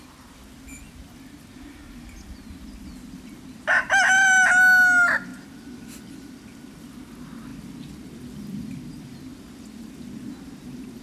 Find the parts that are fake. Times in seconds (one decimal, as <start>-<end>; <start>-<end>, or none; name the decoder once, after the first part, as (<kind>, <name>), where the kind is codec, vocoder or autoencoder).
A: none